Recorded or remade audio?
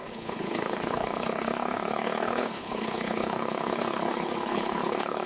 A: remade